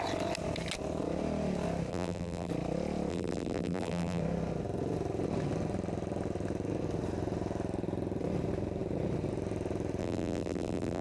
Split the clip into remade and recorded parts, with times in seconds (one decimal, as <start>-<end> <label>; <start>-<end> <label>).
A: 0.0-1.9 recorded; 1.9-2.5 remade; 2.5-3.1 recorded; 3.1-4.2 remade; 4.2-10.0 recorded; 10.0-11.0 remade